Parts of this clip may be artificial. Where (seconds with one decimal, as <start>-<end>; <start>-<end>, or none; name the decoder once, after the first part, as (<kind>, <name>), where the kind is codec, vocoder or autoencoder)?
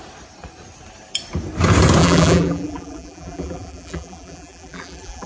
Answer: 2.0-5.3 (vocoder, BigVGAN v2)